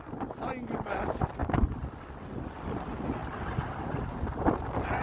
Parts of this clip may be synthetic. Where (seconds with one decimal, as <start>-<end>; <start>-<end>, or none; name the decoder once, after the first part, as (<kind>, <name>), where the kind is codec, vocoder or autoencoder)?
3.2-3.8 (vocoder, BigVGAN v2)